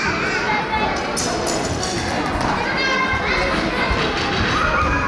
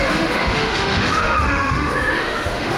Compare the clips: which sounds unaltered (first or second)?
first